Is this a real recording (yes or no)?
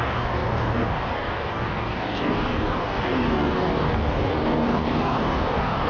no